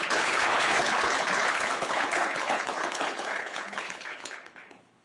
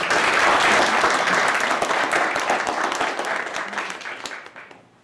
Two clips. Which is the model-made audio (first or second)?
first